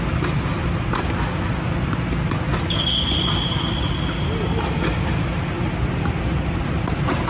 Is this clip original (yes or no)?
yes